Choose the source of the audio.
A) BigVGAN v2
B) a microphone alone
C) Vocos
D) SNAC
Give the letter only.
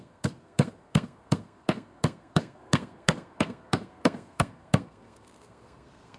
D